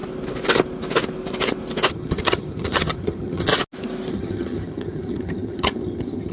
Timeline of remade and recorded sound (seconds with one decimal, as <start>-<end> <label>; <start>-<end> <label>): 0.0-1.9 recorded; 1.9-3.5 remade; 3.5-4.1 recorded; 4.1-6.3 remade